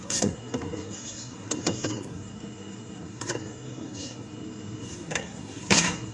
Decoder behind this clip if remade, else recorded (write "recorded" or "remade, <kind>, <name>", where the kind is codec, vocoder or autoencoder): remade, codec, SNAC